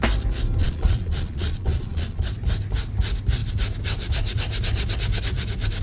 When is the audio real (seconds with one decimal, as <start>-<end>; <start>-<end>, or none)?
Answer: 0.0-0.6; 2.2-5.8